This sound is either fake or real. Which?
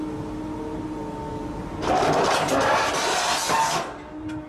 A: real